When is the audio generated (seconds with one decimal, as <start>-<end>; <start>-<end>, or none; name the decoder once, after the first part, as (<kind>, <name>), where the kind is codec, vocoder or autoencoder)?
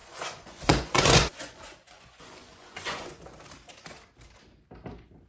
0.0-3.2 (vocoder, Vocos)